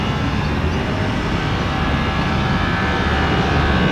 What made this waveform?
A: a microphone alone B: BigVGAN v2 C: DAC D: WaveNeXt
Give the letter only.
A